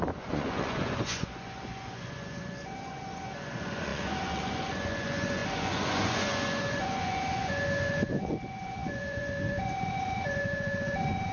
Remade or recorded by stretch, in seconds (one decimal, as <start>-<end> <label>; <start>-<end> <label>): 0.0-11.3 remade